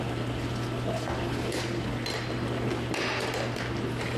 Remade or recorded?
recorded